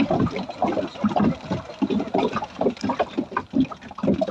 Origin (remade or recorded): recorded